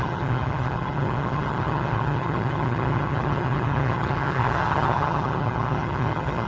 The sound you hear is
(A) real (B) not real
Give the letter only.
B